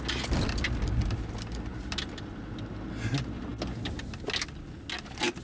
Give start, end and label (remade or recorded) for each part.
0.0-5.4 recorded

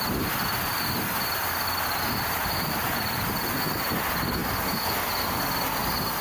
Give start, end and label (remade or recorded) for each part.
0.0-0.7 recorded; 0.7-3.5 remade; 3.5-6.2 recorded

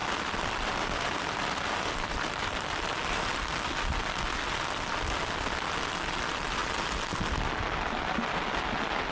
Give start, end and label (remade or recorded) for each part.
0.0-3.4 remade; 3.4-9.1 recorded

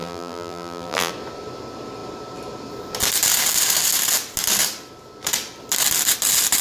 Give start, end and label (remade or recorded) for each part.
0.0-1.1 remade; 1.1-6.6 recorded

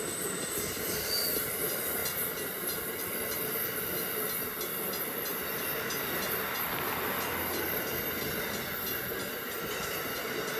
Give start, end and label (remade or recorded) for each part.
0.0-2.0 recorded; 2.0-2.9 remade; 2.9-10.6 recorded

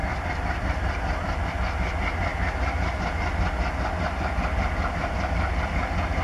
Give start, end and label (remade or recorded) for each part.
0.0-1.5 remade; 1.5-6.2 recorded

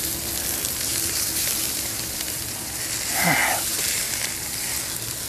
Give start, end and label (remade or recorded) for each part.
0.0-0.9 recorded; 0.9-2.8 remade; 2.8-5.3 recorded